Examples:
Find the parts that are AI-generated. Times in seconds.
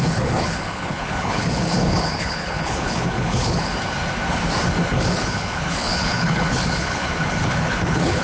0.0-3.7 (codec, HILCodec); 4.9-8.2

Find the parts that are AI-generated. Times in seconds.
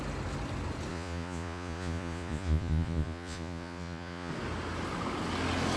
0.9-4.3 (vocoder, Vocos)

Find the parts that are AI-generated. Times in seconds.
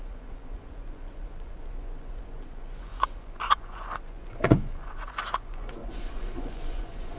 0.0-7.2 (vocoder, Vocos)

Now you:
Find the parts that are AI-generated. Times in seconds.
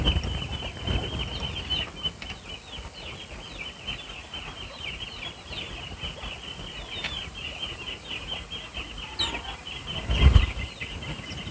4.2-6.0 (vocoder, BigVGAN v2); 7.0-10.7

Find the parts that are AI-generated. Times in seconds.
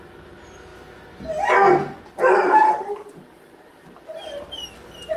2.6-4.2 (vocoder, BigVGAN v2)